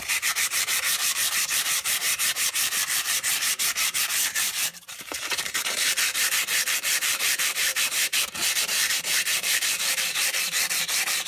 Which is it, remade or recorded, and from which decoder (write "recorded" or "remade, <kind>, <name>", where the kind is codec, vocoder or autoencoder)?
remade, vocoder, BigVGAN v2